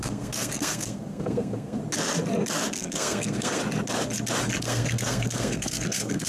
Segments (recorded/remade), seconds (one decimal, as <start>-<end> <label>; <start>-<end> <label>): 0.0-1.8 remade; 1.8-2.7 recorded; 2.7-3.6 remade; 3.6-4.6 recorded; 4.6-6.3 remade